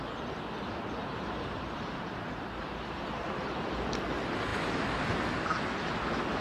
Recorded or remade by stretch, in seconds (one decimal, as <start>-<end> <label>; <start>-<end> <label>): 0.0-1.0 recorded; 1.0-3.6 remade; 3.6-6.4 recorded